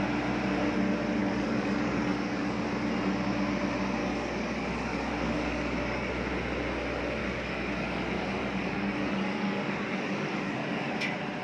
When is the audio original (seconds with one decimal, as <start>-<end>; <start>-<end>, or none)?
0.0-1.2; 2.6-4.0; 6.1-7.2; 10.9-11.4